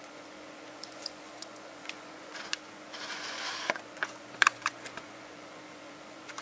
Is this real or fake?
fake